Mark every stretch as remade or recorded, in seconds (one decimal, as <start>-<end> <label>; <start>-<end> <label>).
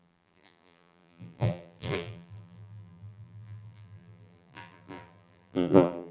0.0-6.1 remade